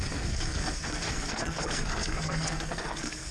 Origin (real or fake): fake